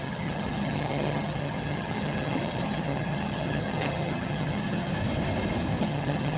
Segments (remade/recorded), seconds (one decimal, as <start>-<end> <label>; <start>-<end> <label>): 0.0-4.9 remade; 4.9-5.8 recorded; 5.8-6.4 remade